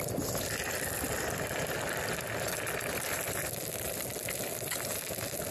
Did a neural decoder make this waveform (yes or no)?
no